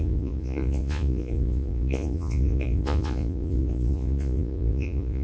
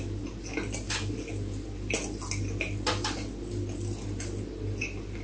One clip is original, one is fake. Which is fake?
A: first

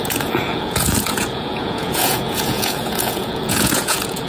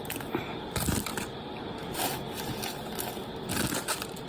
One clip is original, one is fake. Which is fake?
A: first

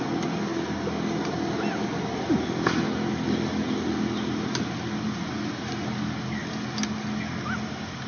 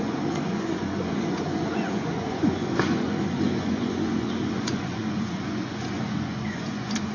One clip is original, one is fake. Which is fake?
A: second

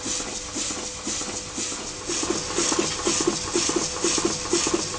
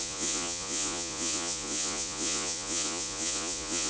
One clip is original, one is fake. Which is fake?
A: second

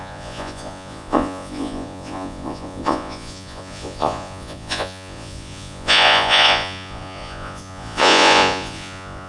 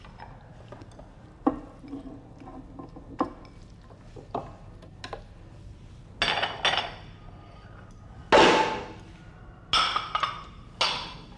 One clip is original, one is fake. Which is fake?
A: first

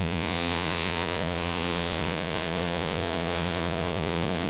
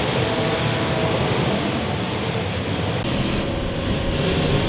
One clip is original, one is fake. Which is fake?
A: first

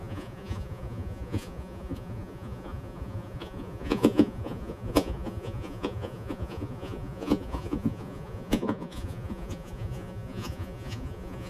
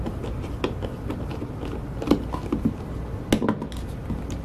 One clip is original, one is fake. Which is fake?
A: first